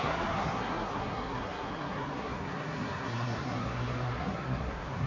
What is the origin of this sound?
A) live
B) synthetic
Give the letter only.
B